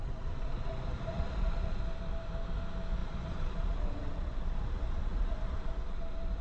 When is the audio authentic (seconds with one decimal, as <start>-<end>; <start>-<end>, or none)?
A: 1.8-3.0; 5.7-6.4